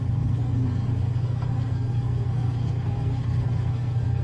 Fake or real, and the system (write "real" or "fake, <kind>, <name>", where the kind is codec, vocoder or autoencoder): fake, codec, SNAC